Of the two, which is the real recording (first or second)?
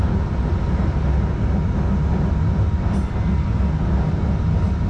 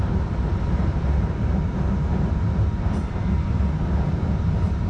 first